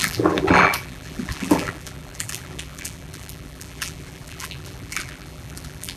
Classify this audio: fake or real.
fake